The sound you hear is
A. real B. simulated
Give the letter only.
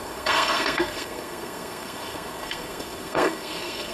B